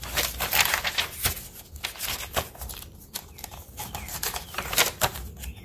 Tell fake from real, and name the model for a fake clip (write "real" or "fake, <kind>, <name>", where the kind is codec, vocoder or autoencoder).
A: real